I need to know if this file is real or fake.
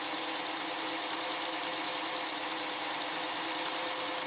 real